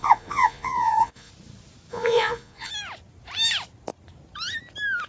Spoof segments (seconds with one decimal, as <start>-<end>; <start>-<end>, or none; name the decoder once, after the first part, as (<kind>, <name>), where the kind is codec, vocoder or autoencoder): 0.0-1.3 (vocoder, Vocos); 1.9-2.7

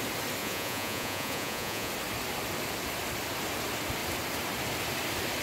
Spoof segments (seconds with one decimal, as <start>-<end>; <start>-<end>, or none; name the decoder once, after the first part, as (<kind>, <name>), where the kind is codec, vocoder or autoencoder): 0.4-1.9 (vocoder, Vocos)